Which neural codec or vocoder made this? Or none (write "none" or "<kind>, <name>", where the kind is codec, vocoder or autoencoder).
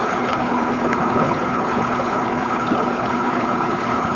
codec, HILCodec